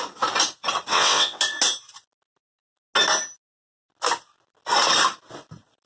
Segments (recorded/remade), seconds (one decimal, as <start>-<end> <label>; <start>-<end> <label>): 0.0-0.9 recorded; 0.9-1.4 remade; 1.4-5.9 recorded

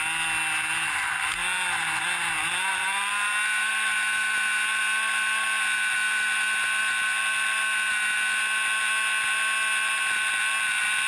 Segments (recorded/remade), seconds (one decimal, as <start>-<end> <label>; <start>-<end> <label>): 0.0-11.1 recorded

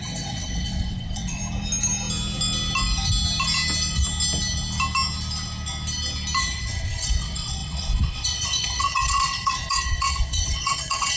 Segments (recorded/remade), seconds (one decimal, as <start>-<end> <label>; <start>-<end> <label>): 0.0-1.4 remade; 1.4-6.4 recorded; 6.4-11.2 remade

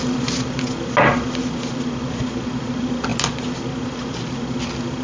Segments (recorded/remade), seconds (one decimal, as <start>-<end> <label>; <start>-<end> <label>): 0.0-5.0 recorded